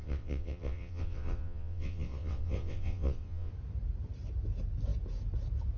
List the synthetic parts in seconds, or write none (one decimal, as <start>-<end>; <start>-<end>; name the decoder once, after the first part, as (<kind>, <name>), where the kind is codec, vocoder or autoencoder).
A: 0.0-3.5 (vocoder, WaveNeXt)